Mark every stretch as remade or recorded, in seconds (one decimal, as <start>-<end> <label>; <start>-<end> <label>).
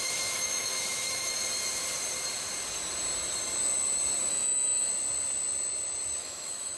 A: 0.0-1.4 remade; 1.4-4.3 recorded; 4.3-4.9 remade; 4.9-6.2 recorded; 6.2-6.8 remade